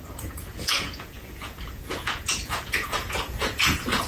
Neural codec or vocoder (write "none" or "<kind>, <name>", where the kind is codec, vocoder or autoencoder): vocoder, Vocos